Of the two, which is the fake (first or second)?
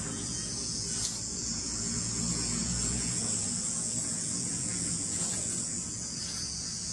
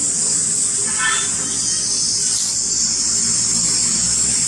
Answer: first